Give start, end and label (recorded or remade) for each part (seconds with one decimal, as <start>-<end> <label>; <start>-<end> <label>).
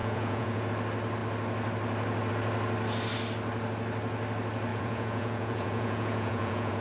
0.0-0.7 remade; 0.7-4.7 recorded; 4.7-6.8 remade